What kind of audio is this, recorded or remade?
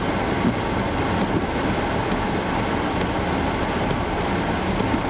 recorded